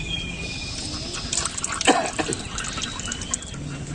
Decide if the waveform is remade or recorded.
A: recorded